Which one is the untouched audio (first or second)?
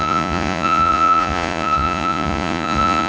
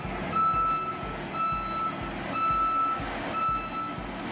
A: second